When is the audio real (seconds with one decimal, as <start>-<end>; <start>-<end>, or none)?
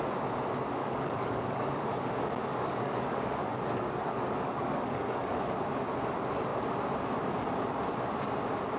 0.0-0.8; 2.1-2.5; 5.5-8.8